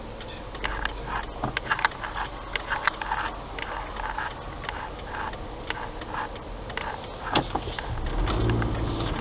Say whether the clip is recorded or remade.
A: recorded